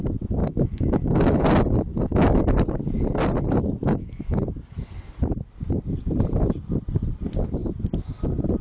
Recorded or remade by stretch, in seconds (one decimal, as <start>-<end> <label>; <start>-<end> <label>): 0.0-0.4 recorded; 0.4-1.5 remade; 1.5-1.9 recorded; 1.9-2.4 remade; 2.4-3.8 recorded; 3.8-4.4 remade; 4.4-8.6 recorded